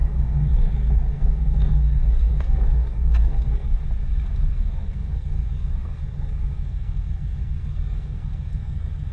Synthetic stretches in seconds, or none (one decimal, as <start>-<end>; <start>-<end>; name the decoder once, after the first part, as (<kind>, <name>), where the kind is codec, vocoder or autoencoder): 0.0-3.8 (codec, SNAC); 4.5-9.1